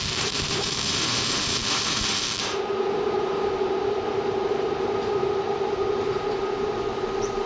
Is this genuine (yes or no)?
no